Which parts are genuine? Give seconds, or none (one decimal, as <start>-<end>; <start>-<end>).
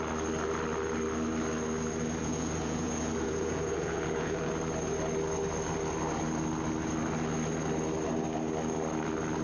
0.0-2.2; 4.5-9.4